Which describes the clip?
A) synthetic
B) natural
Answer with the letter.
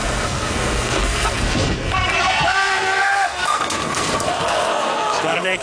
A